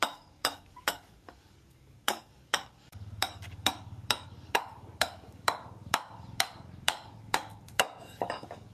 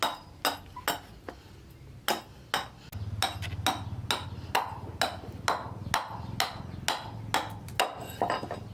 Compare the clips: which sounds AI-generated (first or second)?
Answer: first